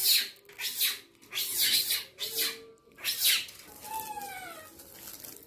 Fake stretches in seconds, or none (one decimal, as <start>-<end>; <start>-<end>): none